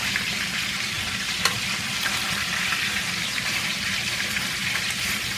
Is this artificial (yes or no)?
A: yes